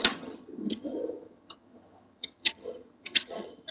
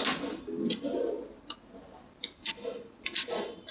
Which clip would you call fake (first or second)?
first